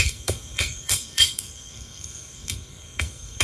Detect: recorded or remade remade